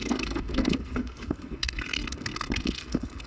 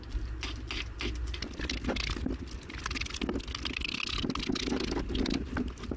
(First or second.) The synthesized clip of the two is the first